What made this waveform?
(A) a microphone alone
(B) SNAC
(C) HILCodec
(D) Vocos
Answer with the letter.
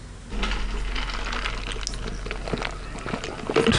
A